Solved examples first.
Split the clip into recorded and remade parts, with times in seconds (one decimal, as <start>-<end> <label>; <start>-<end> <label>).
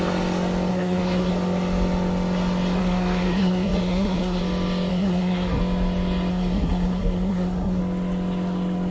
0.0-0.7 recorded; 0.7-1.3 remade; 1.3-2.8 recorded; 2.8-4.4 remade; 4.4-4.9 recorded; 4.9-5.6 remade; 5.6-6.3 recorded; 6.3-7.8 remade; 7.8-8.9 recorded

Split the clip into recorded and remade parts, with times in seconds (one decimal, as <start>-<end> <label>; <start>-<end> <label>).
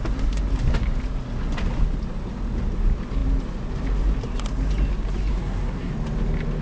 0.0-5.3 recorded; 5.3-5.9 remade; 5.9-6.6 recorded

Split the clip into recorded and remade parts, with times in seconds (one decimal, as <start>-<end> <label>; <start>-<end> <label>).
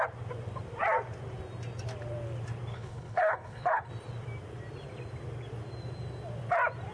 0.0-2.7 recorded; 2.7-3.9 remade; 3.9-6.9 recorded